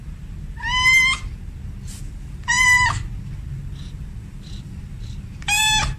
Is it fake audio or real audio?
real